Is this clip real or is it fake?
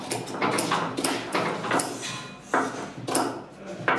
real